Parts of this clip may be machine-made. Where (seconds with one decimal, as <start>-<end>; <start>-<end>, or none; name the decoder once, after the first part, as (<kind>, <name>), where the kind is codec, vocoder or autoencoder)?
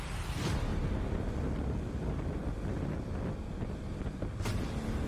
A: none